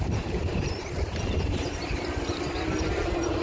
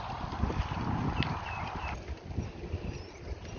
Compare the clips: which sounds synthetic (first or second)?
first